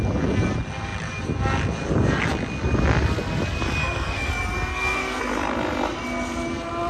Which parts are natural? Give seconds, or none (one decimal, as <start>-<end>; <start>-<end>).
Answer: 0.0-3.8; 4.3-4.7; 5.2-6.9